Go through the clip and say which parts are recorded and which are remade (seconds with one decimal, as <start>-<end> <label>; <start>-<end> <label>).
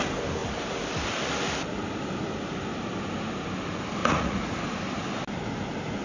0.0-4.0 recorded; 4.0-4.6 remade; 4.6-6.0 recorded